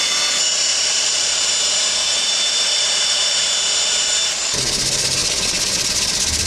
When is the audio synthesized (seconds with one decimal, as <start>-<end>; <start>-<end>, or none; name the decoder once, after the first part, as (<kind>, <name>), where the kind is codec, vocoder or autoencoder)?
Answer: 0.7-4.6 (vocoder, BigVGAN v2)